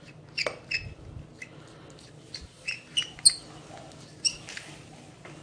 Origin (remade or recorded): recorded